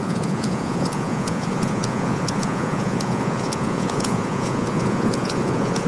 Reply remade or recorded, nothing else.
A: remade